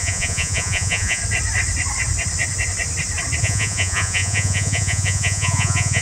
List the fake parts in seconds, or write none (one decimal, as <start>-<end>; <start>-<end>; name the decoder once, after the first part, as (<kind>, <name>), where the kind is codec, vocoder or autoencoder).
0.0-1.2 (vocoder, Vocos); 3.4-6.0